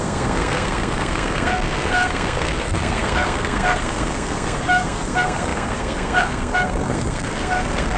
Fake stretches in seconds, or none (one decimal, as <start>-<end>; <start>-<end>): 0.0-8.0